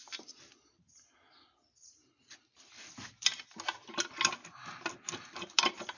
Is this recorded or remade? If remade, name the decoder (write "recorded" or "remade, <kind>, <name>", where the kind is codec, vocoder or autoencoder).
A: recorded